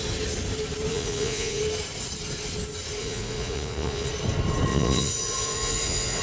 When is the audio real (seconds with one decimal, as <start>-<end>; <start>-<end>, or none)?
0.0-0.9; 1.6-3.0; 4.1-4.7